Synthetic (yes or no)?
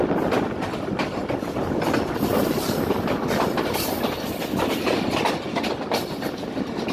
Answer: no